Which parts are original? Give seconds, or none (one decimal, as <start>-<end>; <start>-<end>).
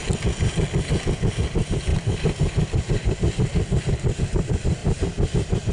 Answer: 0.0-1.9; 4.2-4.8